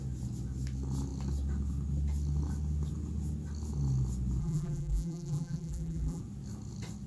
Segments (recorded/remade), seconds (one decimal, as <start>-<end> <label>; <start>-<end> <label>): 0.0-4.4 recorded; 4.4-6.2 remade; 6.2-7.1 recorded

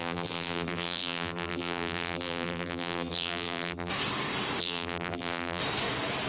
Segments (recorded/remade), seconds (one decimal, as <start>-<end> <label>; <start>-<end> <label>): 0.0-3.9 remade; 3.9-4.6 recorded; 4.6-5.6 remade; 5.6-6.3 recorded